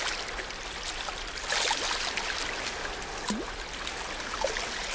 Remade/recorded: recorded